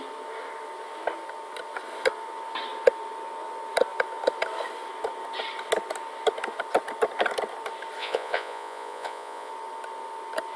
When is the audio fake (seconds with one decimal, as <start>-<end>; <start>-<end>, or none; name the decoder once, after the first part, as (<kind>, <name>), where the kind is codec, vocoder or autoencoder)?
8.0-9.5 (vocoder, Vocos)